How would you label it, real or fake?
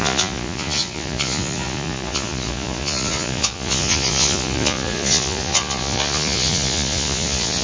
fake